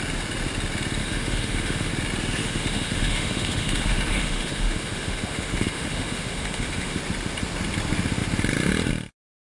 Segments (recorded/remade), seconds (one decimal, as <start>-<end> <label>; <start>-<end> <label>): 0.0-1.0 recorded; 1.0-1.9 remade; 1.9-2.4 recorded; 2.4-7.0 remade; 7.0-9.5 recorded